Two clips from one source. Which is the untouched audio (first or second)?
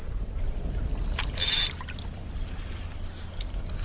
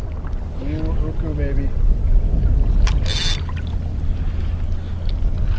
second